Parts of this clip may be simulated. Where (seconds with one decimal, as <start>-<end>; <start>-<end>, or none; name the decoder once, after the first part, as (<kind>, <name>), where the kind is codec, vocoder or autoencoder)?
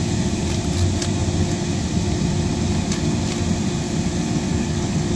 4.5-5.2 (codec, DAC)